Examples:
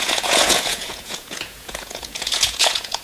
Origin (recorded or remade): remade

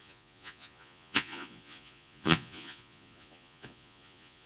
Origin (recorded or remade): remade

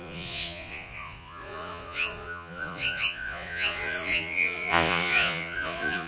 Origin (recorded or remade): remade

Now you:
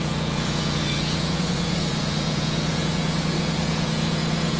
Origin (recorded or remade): remade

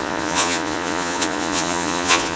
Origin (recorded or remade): remade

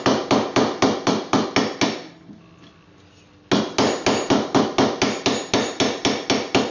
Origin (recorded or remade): recorded